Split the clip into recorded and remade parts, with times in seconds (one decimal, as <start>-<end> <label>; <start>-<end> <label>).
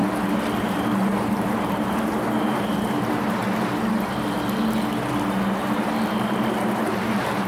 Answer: 0.0-0.6 recorded; 0.6-3.4 remade; 3.4-6.8 recorded; 6.8-7.5 remade